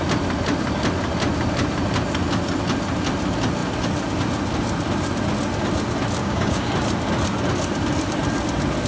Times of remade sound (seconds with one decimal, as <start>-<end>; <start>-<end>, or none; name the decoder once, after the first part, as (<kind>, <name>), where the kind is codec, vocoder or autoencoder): 6.2-6.7 (codec, DAC)